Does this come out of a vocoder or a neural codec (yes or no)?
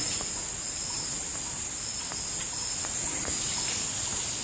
no